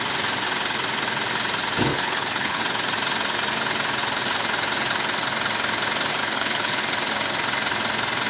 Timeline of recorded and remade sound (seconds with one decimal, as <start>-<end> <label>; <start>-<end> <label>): 0.0-1.9 recorded; 1.9-2.6 remade; 2.6-6.2 recorded; 6.2-6.8 remade; 6.8-8.3 recorded